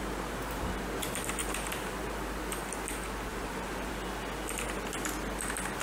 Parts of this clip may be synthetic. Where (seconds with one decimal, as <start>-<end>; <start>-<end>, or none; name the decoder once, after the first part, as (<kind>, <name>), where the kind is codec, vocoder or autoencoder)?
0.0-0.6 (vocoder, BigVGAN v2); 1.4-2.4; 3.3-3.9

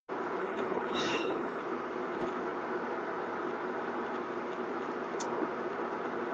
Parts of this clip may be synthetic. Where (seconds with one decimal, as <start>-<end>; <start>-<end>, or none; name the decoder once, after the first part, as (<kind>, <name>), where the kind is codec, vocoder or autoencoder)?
0.4-1.6 (codec, HILCodec)

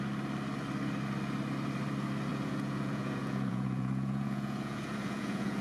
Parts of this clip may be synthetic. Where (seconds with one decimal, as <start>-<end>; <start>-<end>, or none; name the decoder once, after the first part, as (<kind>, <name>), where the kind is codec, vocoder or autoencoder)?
2.3-5.6 (vocoder, Vocos)

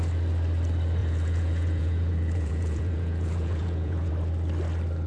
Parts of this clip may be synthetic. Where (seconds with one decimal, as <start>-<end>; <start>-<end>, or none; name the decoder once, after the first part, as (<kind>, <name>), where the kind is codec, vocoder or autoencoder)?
1.0-4.1 (vocoder, Vocos)

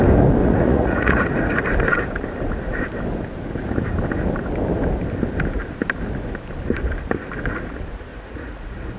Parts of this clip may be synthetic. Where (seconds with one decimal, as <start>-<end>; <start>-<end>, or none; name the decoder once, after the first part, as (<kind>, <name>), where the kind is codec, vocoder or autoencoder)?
0.4-1.5 (vocoder, Vocos); 8.1-9.0

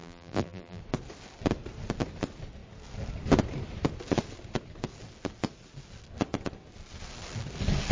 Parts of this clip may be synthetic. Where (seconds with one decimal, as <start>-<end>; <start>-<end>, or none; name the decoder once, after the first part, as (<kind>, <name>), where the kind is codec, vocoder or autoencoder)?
0.0-0.8 (vocoder, BigVGAN v2)

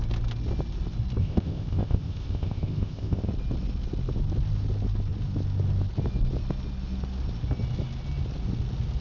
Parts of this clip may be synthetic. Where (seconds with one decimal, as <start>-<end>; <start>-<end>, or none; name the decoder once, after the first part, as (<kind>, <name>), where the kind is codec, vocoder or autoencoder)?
1.2-3.3 (codec, ZipCodec)

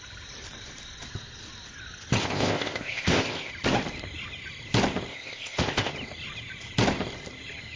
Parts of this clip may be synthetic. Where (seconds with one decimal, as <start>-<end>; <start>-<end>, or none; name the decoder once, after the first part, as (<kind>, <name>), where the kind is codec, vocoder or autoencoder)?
2.2-3.5 (codec, ZipCodec); 5.1-5.9